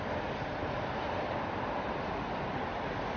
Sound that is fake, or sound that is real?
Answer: real